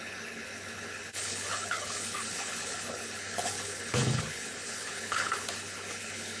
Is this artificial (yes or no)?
yes